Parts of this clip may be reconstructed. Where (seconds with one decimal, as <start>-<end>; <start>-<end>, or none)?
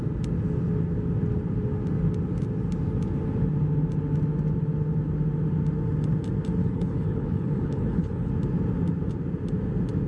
6.6-8.3